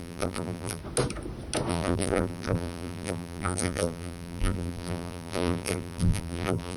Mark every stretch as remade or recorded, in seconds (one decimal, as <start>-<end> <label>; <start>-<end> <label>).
0.0-0.8 remade; 0.8-1.7 recorded; 1.7-6.8 remade

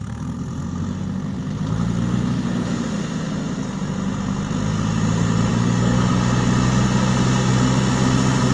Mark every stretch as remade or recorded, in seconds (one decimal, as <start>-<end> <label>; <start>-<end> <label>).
0.0-5.5 recorded; 5.5-6.1 remade; 6.1-8.5 recorded

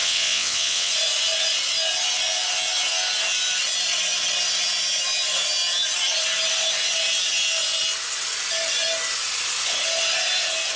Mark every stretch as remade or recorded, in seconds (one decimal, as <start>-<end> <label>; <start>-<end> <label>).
0.0-0.9 remade; 0.9-10.8 recorded